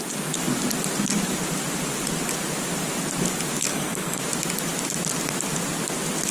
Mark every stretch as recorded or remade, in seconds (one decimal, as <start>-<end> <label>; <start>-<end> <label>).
0.0-3.7 recorded; 3.7-4.2 remade; 4.2-6.3 recorded